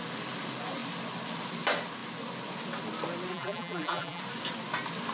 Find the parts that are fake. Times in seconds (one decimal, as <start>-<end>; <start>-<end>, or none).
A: 3.3-4.2